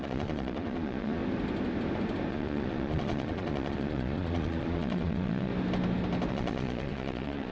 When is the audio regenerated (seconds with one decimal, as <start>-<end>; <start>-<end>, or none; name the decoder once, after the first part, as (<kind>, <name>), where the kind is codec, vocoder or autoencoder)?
0.0-1.2 (vocoder, Vocos); 2.3-5.5; 6.3-7.5